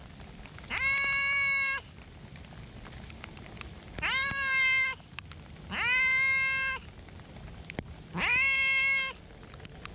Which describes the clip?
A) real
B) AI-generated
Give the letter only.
A